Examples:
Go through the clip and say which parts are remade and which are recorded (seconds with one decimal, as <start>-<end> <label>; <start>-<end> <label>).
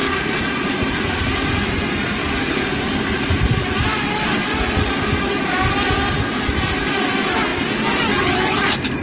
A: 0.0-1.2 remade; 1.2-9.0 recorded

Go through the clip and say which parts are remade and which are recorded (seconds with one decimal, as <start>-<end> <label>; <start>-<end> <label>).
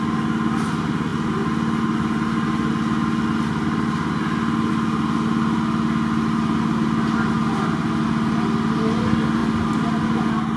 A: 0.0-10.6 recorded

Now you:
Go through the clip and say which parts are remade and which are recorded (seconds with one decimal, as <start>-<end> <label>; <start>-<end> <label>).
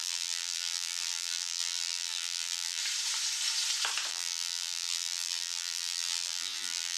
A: 0.0-2.8 remade; 2.8-4.1 recorded; 4.1-7.0 remade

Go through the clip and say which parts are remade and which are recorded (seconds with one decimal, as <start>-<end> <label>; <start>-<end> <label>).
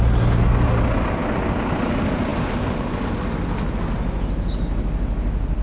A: 0.0-5.6 recorded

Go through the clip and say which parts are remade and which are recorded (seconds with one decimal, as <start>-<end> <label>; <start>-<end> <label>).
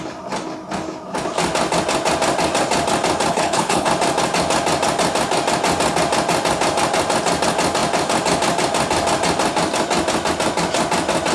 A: 0.0-3.3 recorded; 3.3-3.9 remade; 3.9-11.3 recorded